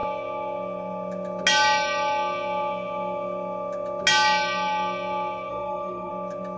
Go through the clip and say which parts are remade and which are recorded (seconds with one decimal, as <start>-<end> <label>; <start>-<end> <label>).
0.0-5.5 recorded; 5.5-6.1 remade; 6.1-6.6 recorded